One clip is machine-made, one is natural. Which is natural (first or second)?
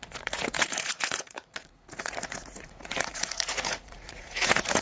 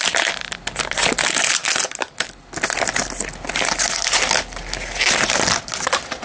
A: second